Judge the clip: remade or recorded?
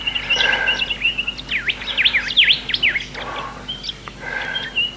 recorded